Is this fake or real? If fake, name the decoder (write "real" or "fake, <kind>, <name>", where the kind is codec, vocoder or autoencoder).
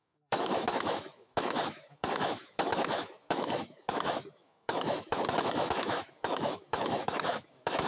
fake, autoencoder, DAC-VAE